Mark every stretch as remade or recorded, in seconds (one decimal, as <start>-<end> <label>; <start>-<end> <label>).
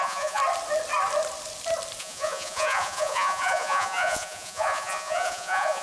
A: 0.0-0.4 remade; 0.4-2.0 recorded; 2.0-5.8 remade